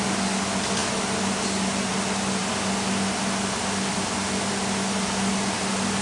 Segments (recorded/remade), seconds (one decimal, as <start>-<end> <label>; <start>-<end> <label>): 0.0-6.0 recorded